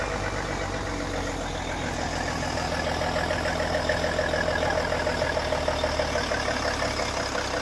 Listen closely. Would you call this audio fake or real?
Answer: real